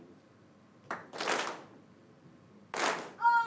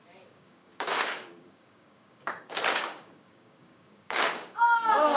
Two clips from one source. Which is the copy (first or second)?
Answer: second